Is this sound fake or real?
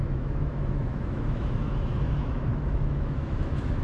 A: fake